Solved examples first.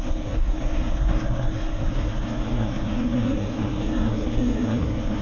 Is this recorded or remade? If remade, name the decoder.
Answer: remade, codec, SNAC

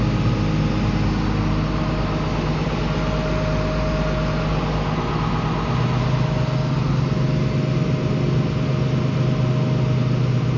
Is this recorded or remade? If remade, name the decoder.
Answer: recorded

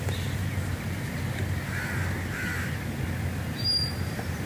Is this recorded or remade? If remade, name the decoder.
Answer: recorded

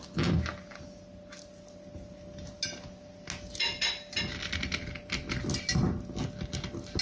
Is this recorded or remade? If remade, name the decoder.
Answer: recorded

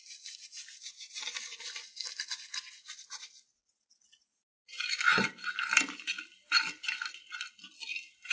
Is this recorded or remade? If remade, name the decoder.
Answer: recorded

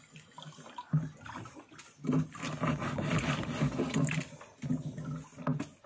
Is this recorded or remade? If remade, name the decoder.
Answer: recorded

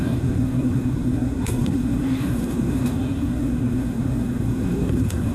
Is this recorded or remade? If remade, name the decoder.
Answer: remade, codec, SNAC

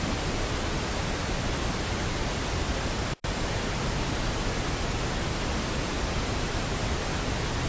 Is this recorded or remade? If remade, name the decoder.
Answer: recorded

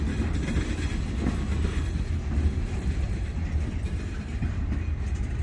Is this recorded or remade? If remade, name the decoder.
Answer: recorded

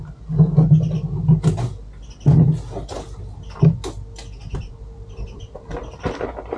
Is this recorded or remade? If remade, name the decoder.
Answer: recorded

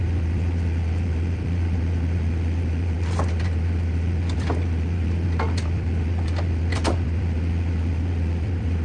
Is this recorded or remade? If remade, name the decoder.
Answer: remade, vocoder, BigVGAN v2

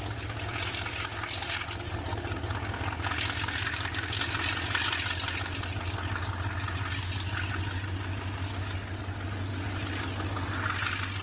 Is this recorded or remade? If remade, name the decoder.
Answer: recorded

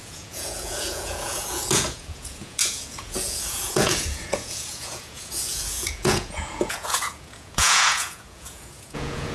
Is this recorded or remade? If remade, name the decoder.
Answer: remade, vocoder, Vocos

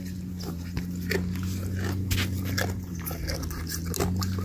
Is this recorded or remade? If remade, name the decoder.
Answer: recorded